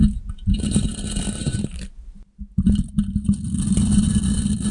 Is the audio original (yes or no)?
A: yes